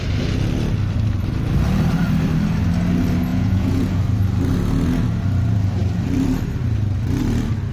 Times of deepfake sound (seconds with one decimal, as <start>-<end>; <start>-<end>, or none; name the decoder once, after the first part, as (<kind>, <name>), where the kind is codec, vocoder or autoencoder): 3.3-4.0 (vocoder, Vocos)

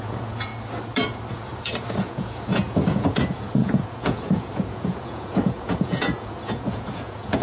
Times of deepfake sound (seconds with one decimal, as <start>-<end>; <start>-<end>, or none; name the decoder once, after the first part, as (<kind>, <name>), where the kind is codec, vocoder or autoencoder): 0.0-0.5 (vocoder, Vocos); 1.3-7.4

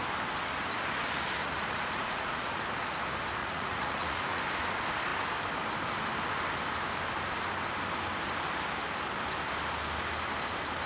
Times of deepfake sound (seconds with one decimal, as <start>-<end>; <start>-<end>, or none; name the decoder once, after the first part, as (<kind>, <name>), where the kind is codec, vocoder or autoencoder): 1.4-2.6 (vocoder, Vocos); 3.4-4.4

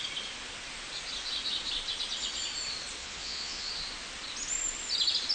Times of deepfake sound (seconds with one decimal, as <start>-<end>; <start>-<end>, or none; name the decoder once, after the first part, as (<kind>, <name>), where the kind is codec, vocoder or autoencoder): 3.0-3.7 (vocoder, Vocos)

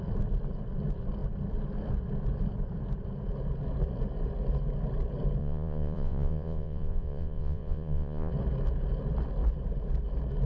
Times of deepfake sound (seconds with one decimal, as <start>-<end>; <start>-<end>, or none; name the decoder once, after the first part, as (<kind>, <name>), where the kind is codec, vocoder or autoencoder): 5.4-8.3 (vocoder, Vocos)

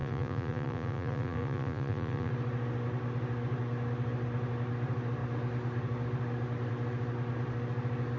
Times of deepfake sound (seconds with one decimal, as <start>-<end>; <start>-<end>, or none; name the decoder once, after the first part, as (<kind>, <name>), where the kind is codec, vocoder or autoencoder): 0.0-2.3 (vocoder, Vocos)